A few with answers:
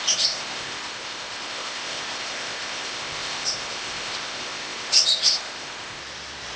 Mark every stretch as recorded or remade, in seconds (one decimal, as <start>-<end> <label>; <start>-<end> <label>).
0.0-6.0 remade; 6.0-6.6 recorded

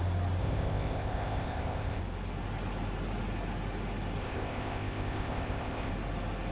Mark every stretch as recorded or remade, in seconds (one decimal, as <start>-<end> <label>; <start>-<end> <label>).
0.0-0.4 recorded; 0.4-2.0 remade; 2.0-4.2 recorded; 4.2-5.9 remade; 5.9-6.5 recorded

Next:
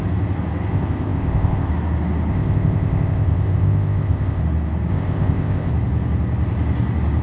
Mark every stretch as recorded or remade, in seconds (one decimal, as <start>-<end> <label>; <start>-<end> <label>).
0.0-0.7 recorded; 0.7-1.7 remade; 1.7-2.3 recorded; 2.3-4.4 remade; 4.4-4.9 recorded; 4.9-5.7 remade; 5.7-7.2 recorded

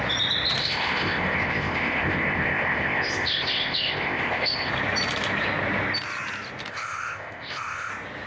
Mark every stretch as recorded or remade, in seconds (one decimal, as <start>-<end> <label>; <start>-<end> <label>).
0.0-0.6 recorded; 0.6-4.7 remade; 4.7-6.7 recorded; 6.7-7.9 remade; 7.9-8.3 recorded